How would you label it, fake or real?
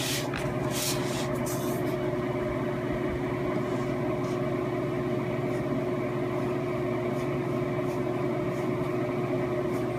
real